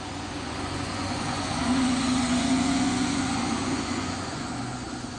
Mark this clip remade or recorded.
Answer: remade